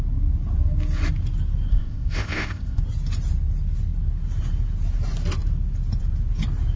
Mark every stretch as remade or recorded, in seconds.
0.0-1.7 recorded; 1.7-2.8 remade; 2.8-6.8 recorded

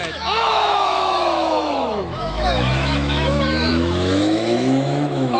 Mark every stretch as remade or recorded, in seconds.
0.0-5.4 remade

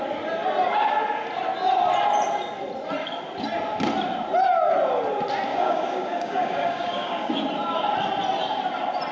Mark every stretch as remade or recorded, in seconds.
0.0-5.5 recorded; 5.5-7.3 remade; 7.3-9.1 recorded

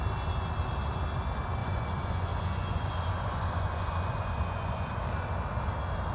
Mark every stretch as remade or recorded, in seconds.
0.0-1.6 recorded; 1.6-4.9 remade; 4.9-6.1 recorded

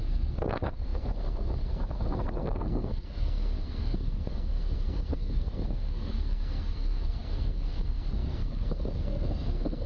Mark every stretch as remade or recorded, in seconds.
0.0-9.9 remade

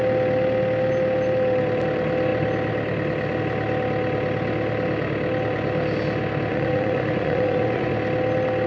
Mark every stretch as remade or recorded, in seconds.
0.0-6.5 recorded; 6.5-7.9 remade; 7.9-8.7 recorded